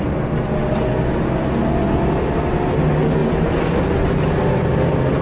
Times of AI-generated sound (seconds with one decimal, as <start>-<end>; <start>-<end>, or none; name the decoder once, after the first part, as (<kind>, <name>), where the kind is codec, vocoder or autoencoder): none